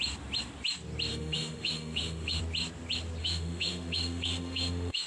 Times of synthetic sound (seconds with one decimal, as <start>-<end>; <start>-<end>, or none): 1.1-2.4; 3.2-5.1